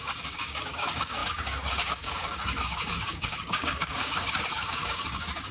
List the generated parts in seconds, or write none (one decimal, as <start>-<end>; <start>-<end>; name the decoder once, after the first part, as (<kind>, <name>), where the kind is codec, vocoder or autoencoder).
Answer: 0.0-5.5 (codec, DAC)